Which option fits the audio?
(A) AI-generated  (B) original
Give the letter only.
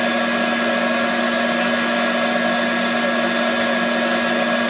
B